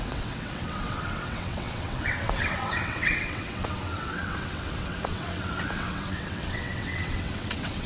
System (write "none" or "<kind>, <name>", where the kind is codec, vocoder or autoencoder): vocoder, WaveNeXt